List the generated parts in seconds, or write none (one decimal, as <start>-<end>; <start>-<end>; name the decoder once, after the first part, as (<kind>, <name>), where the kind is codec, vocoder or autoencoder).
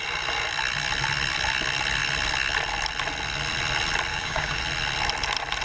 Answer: 4.1-4.6 (codec, DAC)